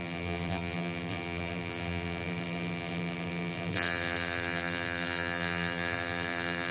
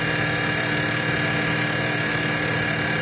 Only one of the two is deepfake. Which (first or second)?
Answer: first